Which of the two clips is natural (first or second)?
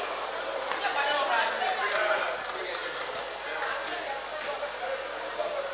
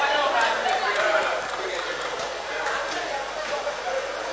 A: first